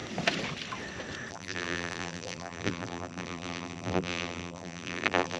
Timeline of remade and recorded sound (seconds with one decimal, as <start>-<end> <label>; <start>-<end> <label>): 0.0-1.3 recorded; 1.3-5.4 remade